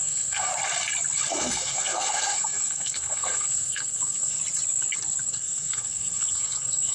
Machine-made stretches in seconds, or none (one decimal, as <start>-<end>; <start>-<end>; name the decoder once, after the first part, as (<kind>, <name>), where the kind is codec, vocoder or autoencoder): 0.0-0.5 (codec, SNAC); 1.3-4.4; 5.2-6.9